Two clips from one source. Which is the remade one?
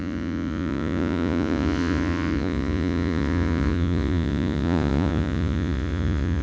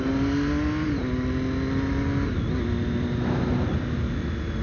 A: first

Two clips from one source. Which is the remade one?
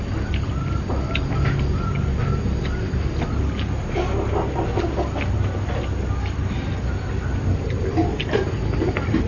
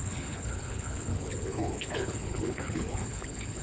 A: second